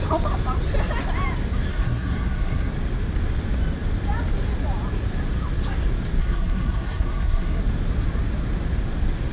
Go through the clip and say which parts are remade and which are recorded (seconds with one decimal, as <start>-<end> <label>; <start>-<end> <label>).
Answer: 0.0-1.7 recorded; 1.7-2.7 remade; 2.7-6.2 recorded; 6.2-7.6 remade; 7.6-9.3 recorded